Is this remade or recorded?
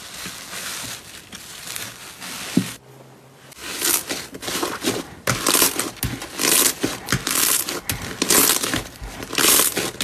recorded